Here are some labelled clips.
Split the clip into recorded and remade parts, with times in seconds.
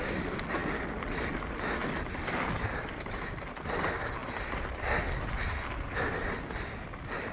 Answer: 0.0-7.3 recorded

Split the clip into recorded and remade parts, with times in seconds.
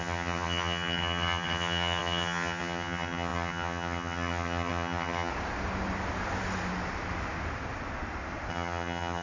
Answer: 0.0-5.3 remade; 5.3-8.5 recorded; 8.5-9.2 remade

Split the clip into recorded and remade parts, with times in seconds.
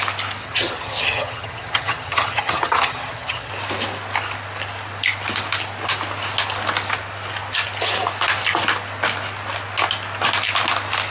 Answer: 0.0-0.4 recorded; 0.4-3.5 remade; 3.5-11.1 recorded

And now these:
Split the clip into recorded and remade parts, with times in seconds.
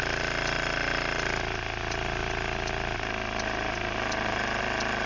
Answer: 0.0-5.1 recorded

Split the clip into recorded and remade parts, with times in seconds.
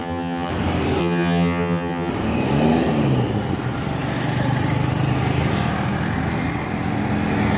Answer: 0.0-0.5 remade; 0.5-1.0 recorded; 1.0-2.1 remade; 2.1-7.6 recorded